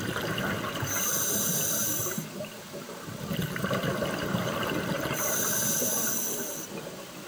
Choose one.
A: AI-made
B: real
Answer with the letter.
A